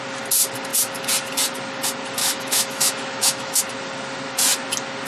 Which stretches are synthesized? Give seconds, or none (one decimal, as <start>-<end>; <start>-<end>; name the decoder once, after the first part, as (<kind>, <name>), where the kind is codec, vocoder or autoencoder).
2.2-3.6 (autoencoder, DAC-VAE)